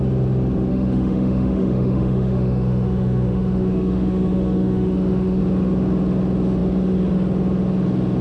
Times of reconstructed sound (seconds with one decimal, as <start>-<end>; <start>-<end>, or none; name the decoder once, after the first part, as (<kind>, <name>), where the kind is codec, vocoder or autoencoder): 0.7-5.4 (autoencoder, DAC-VAE)